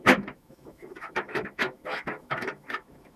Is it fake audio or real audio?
fake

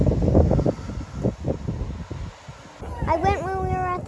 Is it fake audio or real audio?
real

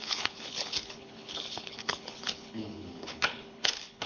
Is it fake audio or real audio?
fake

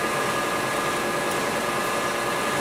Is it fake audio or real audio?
real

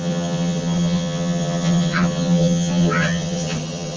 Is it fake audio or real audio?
fake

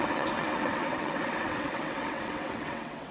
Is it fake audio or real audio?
fake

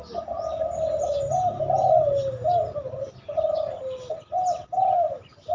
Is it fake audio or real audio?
real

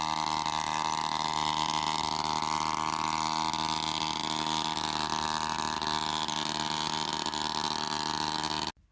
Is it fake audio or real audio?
real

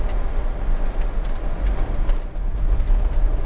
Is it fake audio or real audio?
real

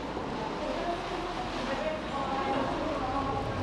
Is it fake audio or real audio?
real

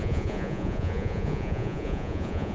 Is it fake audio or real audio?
fake